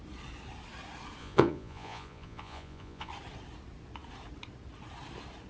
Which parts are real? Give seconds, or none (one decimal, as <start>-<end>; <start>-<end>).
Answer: 0.0-1.2; 3.1-5.5